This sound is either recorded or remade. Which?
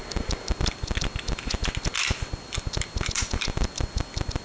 recorded